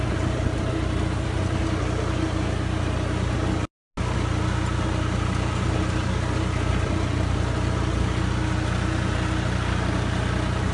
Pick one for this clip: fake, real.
real